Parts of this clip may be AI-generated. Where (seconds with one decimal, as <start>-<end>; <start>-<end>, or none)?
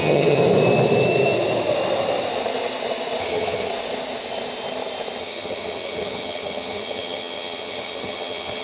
0.0-0.4; 3.2-3.7; 5.2-8.6